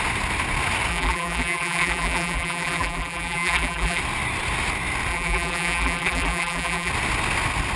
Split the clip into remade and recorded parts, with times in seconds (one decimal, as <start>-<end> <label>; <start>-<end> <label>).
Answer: 0.0-0.9 recorded; 0.9-4.0 remade; 4.0-5.1 recorded; 5.1-6.9 remade; 6.9-7.8 recorded